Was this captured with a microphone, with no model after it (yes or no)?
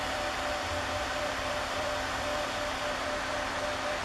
no